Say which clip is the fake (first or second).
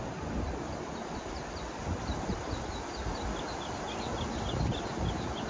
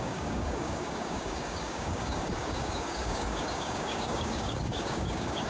second